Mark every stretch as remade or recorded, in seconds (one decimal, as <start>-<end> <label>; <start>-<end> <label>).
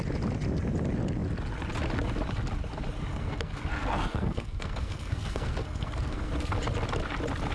0.0-3.1 recorded; 3.1-6.3 remade; 6.3-7.5 recorded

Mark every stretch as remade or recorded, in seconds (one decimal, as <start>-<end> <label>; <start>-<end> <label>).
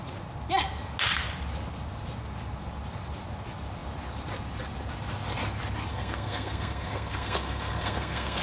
0.0-5.9 recorded; 5.9-8.4 remade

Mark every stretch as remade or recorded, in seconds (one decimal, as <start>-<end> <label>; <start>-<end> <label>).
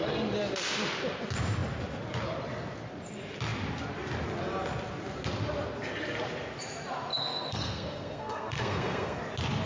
0.0-7.1 recorded; 7.1-9.2 remade; 9.2-9.7 recorded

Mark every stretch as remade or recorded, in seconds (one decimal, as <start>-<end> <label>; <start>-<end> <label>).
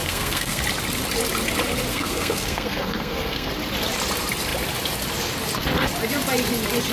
0.0-0.6 remade; 0.6-1.9 recorded; 1.9-3.5 remade; 3.5-6.9 recorded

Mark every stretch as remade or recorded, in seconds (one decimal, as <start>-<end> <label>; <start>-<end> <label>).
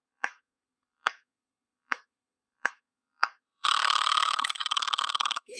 0.0-5.6 remade